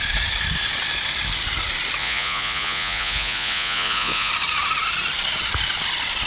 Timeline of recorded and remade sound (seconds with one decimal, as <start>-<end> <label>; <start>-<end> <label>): 0.0-2.0 recorded; 2.0-4.3 remade; 4.3-6.3 recorded

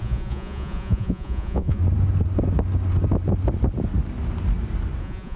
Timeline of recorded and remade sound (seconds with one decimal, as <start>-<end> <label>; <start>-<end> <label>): 0.0-1.8 remade; 1.8-5.0 recorded; 5.0-5.4 remade